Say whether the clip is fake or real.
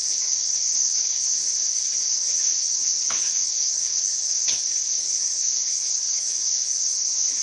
fake